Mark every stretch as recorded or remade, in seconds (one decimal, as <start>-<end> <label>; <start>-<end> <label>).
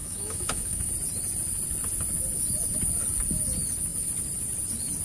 0.0-0.9 remade; 0.9-5.0 recorded